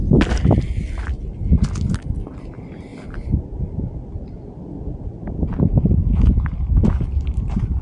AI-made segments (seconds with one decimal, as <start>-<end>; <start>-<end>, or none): 2.4-2.9; 7.2-7.8